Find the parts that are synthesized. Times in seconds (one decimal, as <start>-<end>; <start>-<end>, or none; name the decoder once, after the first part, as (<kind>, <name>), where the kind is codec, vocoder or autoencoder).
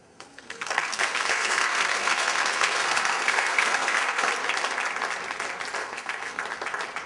0.0-4.3 (codec, SNAC); 5.8-6.4